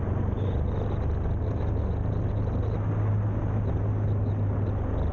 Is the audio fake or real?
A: real